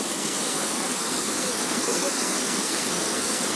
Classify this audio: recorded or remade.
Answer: remade